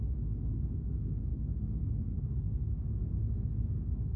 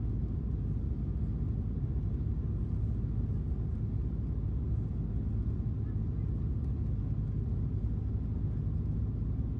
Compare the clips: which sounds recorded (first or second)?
second